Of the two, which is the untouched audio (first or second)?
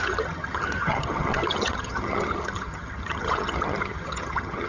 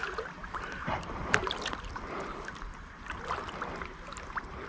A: second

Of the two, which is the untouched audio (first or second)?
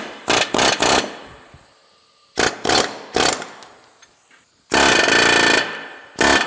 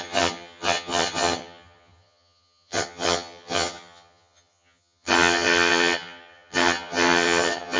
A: first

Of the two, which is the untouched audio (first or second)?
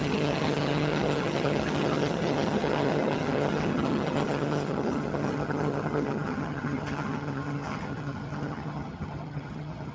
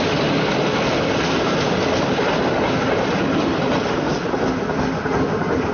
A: second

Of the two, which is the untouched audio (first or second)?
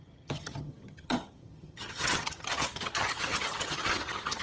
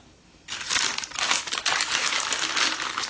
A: second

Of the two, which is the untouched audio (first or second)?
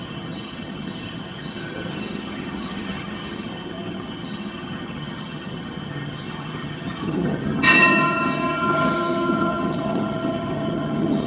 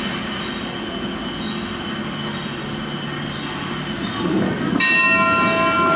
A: second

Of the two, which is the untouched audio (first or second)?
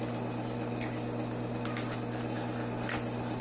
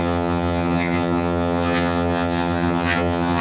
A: first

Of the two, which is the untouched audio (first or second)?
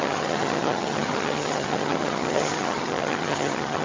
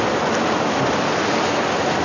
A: second